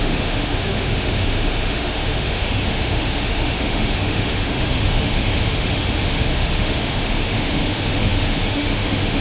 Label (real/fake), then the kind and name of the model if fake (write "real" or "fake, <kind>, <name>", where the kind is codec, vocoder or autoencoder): fake, autoencoder, DAC-VAE